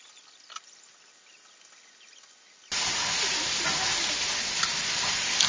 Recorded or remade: recorded